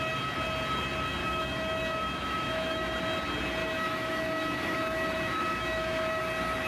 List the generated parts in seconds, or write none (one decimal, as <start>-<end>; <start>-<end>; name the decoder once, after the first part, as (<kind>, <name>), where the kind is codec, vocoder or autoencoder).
1.2-3.0 (autoencoder, DAC-VAE); 3.6-6.2